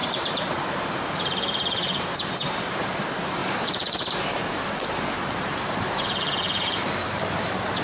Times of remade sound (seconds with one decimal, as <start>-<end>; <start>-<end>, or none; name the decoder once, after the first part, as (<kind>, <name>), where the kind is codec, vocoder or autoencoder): 0.0-7.8 (vocoder, BigVGAN v2)